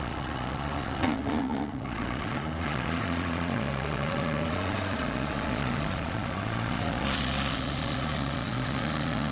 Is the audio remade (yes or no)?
yes